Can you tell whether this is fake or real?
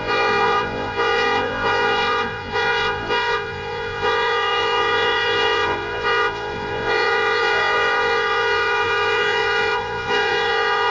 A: fake